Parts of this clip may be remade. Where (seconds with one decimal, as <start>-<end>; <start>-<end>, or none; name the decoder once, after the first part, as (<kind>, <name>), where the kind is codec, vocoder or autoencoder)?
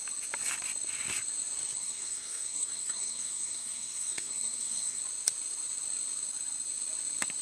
1.8-5.0 (codec, SNAC)